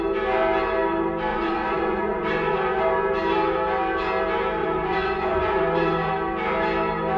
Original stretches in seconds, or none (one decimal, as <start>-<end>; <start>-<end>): 0.0-1.3; 2.8-4.6; 6.1-7.2